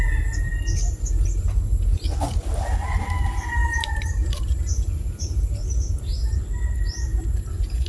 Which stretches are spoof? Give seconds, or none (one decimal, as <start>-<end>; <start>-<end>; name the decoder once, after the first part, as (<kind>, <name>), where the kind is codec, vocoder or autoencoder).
3.6-6.0 (vocoder, BigVGAN v2); 7.1-7.9